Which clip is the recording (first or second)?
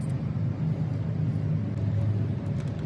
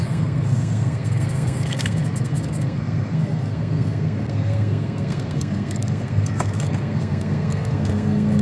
first